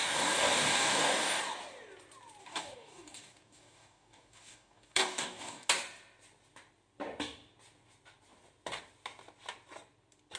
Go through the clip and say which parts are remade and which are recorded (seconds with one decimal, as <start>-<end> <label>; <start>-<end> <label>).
0.0-1.4 remade; 1.4-2.4 recorded; 2.4-5.7 remade; 5.7-10.4 recorded

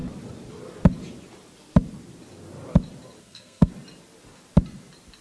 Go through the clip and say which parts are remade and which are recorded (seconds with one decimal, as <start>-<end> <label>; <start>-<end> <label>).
0.0-3.2 recorded; 3.2-3.7 remade; 3.7-5.2 recorded

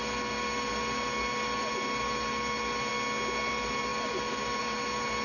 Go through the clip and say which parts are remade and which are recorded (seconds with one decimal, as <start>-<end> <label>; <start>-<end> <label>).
0.0-2.9 remade; 2.9-3.5 recorded; 3.5-5.2 remade